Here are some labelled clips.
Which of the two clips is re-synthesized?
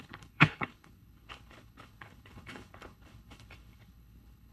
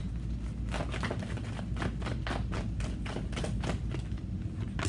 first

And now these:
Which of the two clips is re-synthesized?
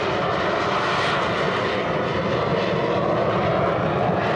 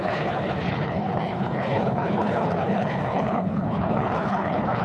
second